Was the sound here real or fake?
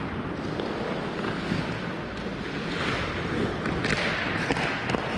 real